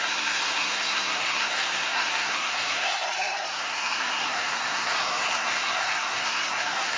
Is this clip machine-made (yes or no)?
yes